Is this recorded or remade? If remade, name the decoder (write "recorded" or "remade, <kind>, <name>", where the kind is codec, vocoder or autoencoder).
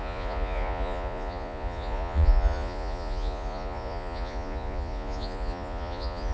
remade, vocoder, Vocos